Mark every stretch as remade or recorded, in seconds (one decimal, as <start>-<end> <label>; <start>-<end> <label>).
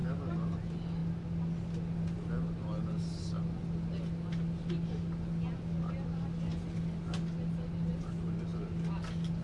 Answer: 0.0-9.4 recorded